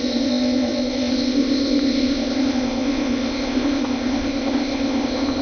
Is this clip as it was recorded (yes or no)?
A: no